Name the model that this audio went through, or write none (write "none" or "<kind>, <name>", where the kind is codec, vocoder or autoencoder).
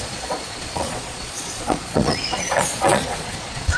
vocoder, Vocos